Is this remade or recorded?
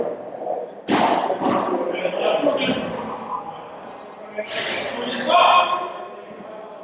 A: recorded